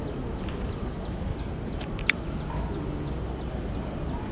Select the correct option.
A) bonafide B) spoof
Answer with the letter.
A